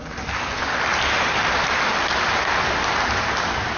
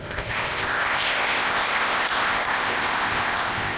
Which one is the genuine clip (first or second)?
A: first